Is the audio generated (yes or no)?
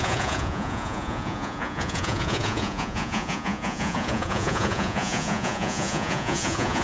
yes